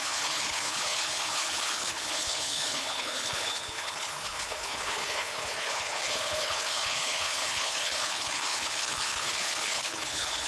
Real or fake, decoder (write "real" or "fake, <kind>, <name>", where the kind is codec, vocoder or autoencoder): fake, codec, HILCodec